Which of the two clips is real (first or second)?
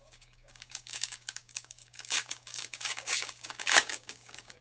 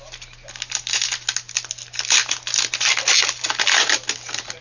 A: second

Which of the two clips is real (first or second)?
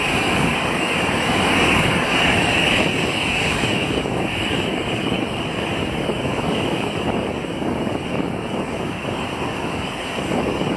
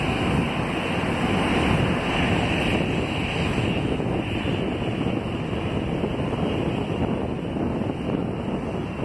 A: second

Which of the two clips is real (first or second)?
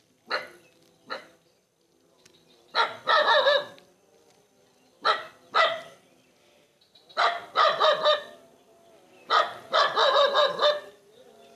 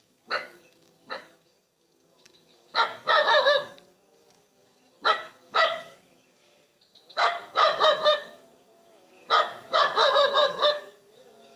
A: first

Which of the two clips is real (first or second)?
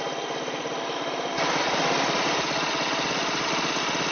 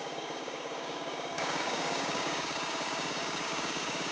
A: first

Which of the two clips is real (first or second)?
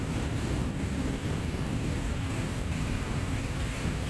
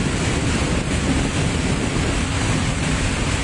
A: second